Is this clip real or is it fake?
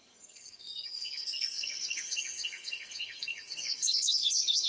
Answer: fake